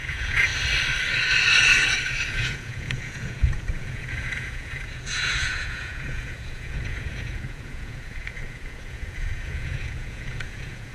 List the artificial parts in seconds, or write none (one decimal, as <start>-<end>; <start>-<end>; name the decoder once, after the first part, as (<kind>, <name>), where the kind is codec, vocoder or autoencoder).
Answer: 0.0-0.5 (vocoder, Vocos); 2.3-10.9

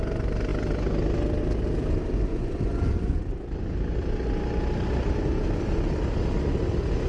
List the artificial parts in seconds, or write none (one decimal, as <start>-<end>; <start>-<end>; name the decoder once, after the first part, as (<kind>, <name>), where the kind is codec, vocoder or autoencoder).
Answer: 2.3-2.9 (vocoder, Vocos)

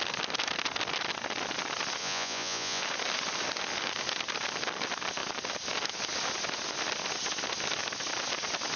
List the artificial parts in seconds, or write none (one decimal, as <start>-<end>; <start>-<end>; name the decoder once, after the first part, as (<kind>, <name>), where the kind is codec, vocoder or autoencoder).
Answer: 2.0-2.8 (vocoder, Vocos)

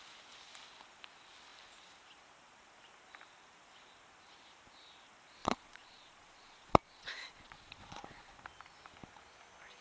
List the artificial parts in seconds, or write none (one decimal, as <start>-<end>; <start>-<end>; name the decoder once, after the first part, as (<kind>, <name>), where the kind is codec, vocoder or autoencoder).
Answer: 5.4-8.4 (vocoder, Vocos)

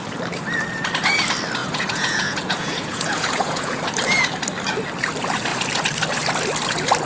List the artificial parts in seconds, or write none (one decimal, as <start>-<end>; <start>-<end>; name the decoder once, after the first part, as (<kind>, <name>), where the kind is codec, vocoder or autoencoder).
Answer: 1.6-3.8 (vocoder, Vocos)

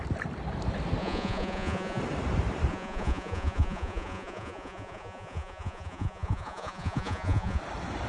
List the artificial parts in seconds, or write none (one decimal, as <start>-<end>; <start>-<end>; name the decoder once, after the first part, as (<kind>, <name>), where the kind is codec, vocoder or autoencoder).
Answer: 1.0-2.0 (vocoder, Vocos); 2.7-7.6